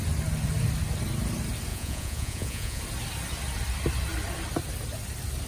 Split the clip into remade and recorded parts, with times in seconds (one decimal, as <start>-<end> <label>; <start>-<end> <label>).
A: 0.0-1.7 recorded; 1.7-2.8 remade; 2.8-5.5 recorded